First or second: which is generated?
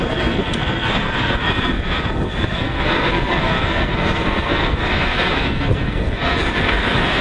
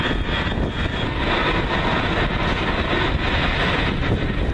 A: first